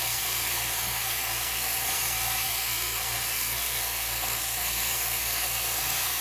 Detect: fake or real fake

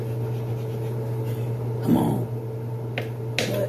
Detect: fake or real real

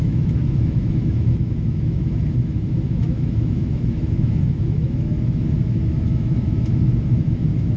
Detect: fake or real fake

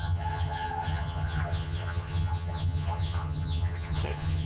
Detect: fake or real fake